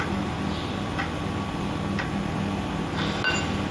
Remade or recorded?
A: recorded